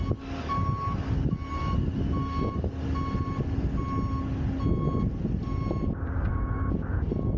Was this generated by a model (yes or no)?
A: no